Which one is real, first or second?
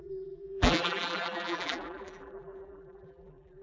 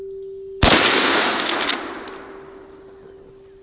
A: second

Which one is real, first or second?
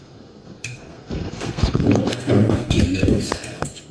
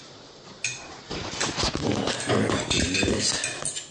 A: second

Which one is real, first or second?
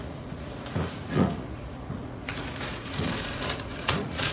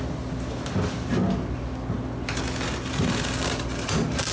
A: second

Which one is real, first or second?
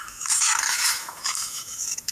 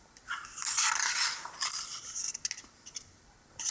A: second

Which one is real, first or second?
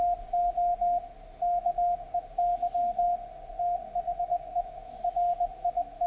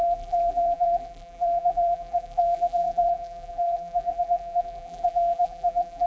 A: first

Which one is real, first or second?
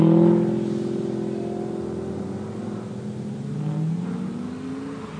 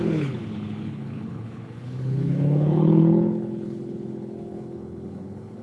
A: first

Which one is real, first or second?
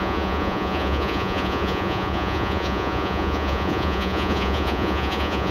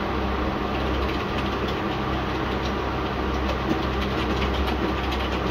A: second